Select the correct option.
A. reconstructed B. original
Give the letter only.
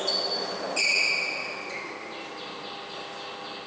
B